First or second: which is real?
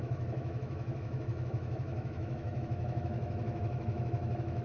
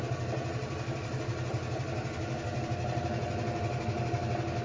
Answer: second